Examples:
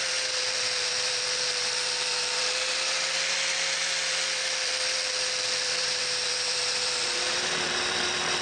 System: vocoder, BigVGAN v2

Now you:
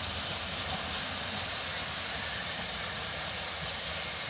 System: none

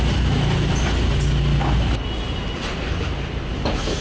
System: none